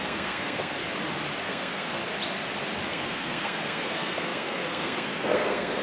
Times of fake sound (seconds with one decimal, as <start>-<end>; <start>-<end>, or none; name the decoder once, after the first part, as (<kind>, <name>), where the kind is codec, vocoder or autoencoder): 0.0-0.8 (codec, SNAC); 1.4-2.0; 2.9-5.8